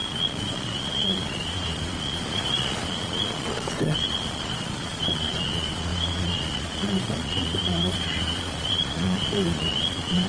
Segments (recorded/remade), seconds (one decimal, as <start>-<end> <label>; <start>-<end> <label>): 0.0-10.3 remade